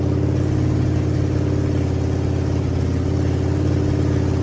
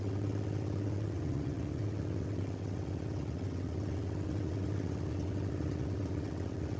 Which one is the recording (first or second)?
first